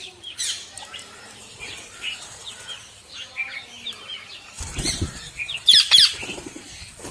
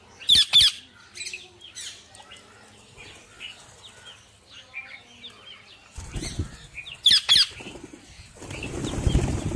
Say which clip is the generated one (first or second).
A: first